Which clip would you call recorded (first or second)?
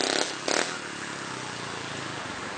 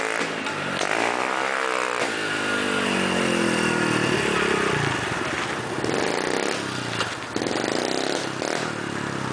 second